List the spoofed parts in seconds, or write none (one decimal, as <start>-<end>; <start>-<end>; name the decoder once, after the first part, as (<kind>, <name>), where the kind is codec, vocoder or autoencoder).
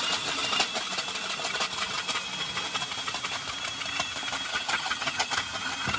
4.5-5.3 (vocoder, HiFi-GAN)